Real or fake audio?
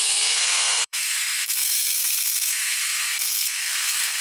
fake